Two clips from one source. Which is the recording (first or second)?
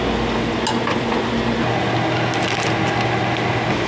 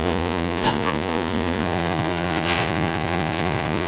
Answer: first